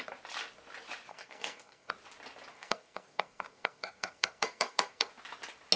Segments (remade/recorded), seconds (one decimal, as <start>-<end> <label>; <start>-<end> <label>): 0.0-1.1 recorded; 1.1-1.9 remade; 1.9-2.5 recorded; 2.5-5.1 remade; 5.1-5.8 recorded

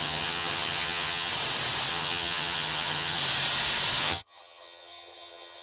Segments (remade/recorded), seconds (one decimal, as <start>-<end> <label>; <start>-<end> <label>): 0.0-1.3 remade; 1.3-1.9 recorded; 1.9-3.2 remade; 3.2-4.0 recorded; 4.0-5.6 remade